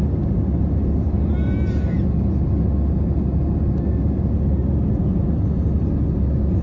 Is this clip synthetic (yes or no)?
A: no